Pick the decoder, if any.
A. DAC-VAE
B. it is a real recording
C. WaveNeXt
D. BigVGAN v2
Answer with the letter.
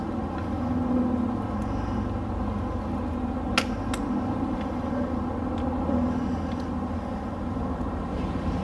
B